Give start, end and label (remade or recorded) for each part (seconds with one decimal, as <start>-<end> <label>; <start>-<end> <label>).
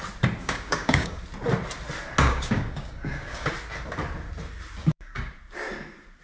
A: 0.0-0.4 recorded; 0.4-1.2 remade; 1.2-2.2 recorded; 2.2-3.5 remade; 3.5-4.8 recorded; 4.8-5.3 remade; 5.3-6.2 recorded